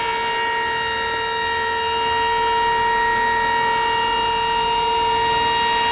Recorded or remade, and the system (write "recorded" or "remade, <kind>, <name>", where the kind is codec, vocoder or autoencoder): recorded